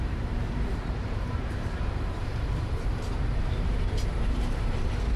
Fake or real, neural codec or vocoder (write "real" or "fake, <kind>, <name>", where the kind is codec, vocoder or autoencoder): fake, vocoder, BigVGAN v2